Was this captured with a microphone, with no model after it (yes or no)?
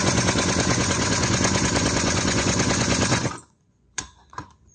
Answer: no